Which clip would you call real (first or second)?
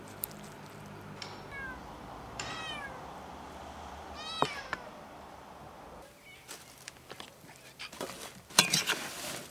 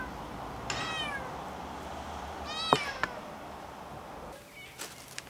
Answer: second